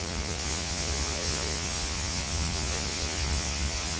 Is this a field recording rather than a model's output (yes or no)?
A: no